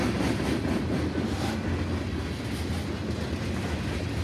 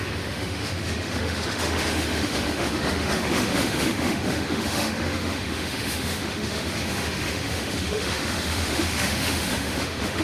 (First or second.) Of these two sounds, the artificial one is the second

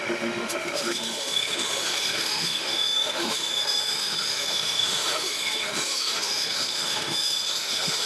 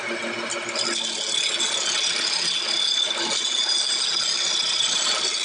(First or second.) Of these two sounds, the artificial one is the first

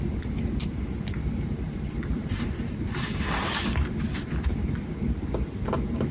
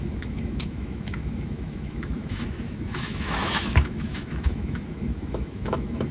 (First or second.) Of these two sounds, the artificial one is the second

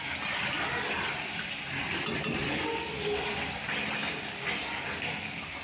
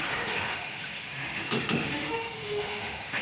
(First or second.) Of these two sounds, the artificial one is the second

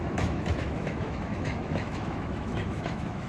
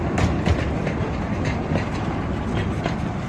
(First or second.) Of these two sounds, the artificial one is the first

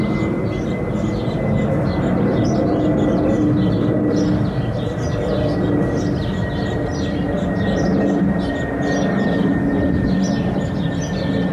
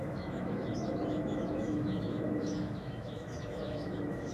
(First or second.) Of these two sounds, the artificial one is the second